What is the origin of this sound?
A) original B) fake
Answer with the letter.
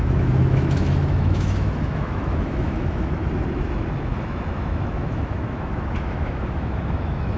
B